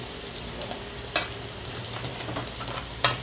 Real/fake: real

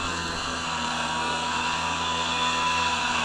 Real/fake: fake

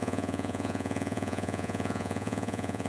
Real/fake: fake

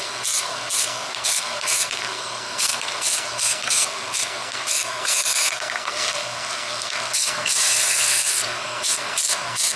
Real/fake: fake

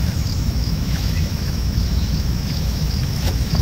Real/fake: fake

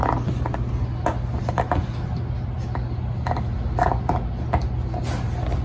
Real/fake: real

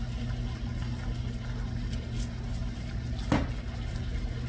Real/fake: real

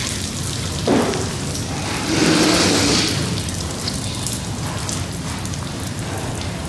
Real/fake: real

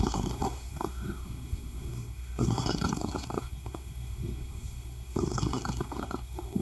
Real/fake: fake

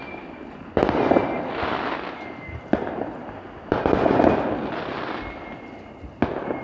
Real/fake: real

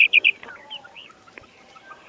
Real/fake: fake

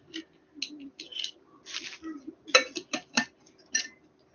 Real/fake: real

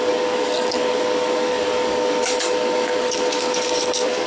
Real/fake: fake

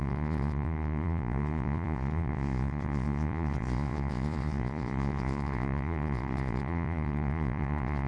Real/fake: fake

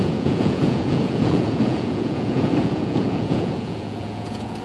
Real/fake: fake